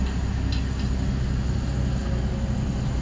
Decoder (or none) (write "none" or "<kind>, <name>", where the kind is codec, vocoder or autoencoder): none